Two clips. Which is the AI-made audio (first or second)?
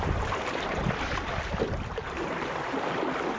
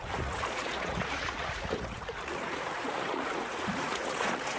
second